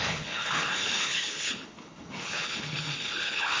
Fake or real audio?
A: fake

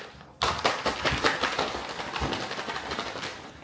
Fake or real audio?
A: real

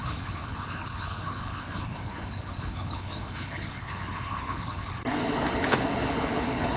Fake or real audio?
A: fake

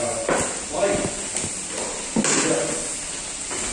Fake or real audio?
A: real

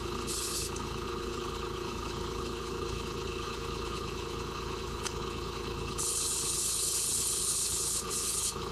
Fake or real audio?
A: fake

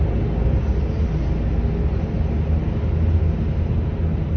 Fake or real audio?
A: real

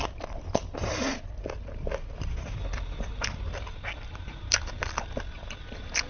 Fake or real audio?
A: real